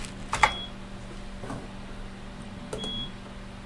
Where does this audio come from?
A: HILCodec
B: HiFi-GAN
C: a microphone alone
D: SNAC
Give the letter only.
C